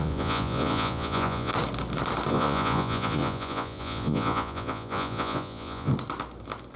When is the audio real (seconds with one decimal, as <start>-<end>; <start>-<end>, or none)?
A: 1.5-2.3; 5.9-6.8